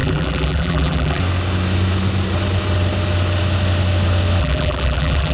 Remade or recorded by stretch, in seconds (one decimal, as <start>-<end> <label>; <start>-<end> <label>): 0.0-1.2 remade; 1.2-4.4 recorded; 4.4-5.3 remade